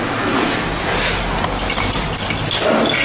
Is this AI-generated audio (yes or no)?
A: no